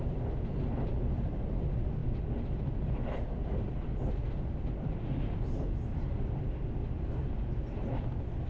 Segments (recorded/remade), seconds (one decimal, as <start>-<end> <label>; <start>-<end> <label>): 0.0-2.0 remade; 2.0-3.6 recorded; 3.6-6.8 remade; 6.8-8.5 recorded